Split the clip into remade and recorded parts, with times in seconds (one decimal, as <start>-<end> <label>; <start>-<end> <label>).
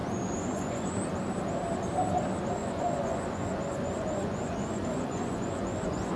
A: 0.0-1.0 remade; 1.0-2.6 recorded; 2.6-6.2 remade